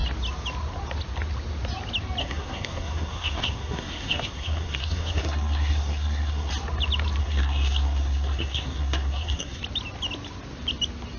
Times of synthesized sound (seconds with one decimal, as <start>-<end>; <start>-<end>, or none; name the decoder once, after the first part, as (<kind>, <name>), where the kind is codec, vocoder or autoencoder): 2.2-6.5 (codec, SNAC); 7.2-9.6